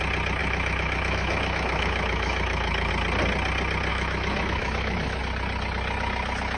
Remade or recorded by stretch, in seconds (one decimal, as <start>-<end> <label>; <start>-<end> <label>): 0.0-0.4 recorded; 0.4-2.9 remade; 2.9-3.9 recorded; 3.9-5.2 remade; 5.2-6.6 recorded